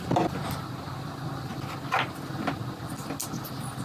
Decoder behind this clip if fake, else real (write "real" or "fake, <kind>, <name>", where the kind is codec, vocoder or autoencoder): real